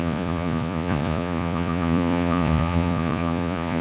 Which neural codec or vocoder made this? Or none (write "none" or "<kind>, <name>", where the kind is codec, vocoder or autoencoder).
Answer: vocoder, Vocos